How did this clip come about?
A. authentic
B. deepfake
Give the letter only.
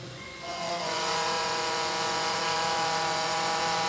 B